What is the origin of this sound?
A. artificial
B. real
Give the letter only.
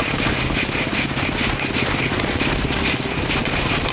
B